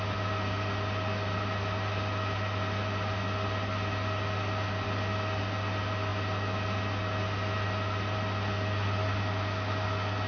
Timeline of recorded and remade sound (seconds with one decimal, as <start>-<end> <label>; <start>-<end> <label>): 0.0-10.3 recorded